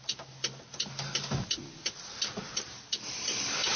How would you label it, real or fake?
fake